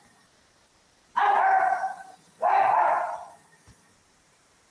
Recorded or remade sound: remade